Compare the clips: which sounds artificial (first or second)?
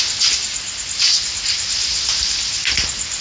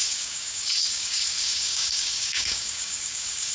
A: second